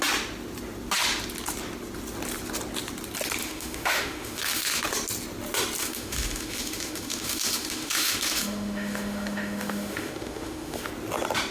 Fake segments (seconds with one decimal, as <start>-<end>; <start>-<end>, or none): 3.4-4.8; 5.8-10.9